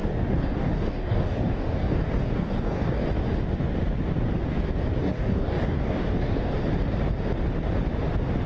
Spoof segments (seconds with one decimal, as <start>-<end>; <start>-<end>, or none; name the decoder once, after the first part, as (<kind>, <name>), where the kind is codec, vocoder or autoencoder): 0.0-3.0 (codec, DAC); 5.0-6.5